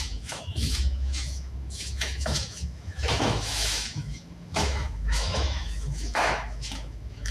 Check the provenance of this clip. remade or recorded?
remade